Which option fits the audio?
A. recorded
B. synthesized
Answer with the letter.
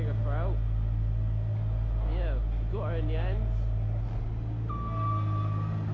A